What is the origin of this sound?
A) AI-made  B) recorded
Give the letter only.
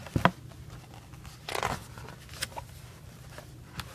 B